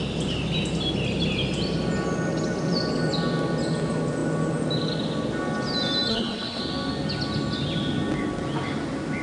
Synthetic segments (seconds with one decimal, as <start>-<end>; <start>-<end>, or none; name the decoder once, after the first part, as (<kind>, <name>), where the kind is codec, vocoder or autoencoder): 6.1-6.6 (codec, SNAC)

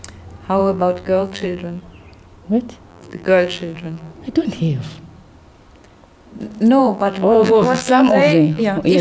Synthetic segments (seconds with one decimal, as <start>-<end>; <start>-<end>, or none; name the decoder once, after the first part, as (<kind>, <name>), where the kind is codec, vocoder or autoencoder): 0.6-1.8 (vocoder, BigVGAN v2); 2.9-4.1; 6.8-8.6

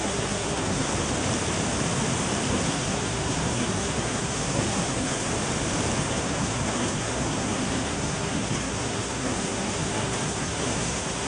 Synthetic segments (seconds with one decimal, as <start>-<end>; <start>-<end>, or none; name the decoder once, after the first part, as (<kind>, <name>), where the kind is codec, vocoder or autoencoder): 0.0-0.9 (codec, SNAC); 2.5-5.3; 6.0-11.3

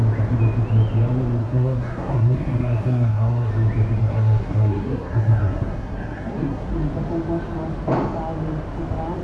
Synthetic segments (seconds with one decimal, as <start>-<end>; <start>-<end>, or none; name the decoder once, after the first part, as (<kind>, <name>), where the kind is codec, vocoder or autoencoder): 1.4-3.5 (codec, SNAC); 4.0-6.7

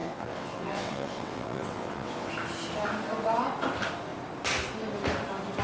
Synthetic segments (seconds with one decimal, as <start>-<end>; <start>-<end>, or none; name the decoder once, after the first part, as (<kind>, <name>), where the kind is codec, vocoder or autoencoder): 0.0-2.3 (vocoder, WaveNeXt)

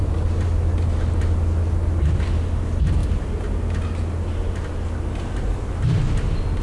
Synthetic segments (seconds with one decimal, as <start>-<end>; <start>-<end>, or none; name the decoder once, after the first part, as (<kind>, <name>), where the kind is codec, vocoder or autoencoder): none